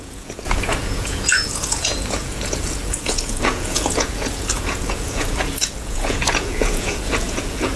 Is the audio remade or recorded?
remade